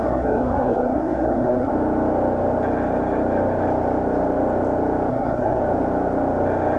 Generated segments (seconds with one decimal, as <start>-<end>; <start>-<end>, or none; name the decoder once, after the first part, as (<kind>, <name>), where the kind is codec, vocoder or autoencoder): 0.0-1.7 (codec, SNAC); 5.1-5.6

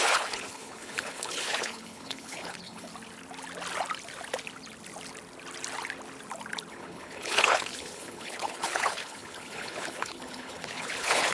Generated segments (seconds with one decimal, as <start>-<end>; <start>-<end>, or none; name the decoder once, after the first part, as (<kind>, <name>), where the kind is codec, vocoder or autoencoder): 0.0-2.9 (codec, HILCodec); 6.7-11.3